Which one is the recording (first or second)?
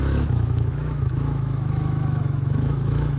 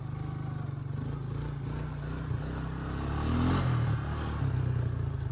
second